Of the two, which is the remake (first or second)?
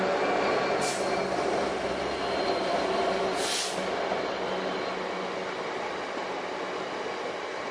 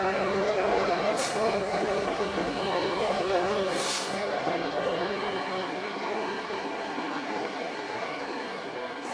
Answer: second